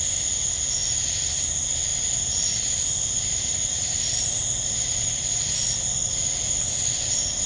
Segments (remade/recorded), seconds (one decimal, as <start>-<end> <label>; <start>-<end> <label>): 0.0-1.9 recorded; 1.9-5.6 remade; 5.6-7.5 recorded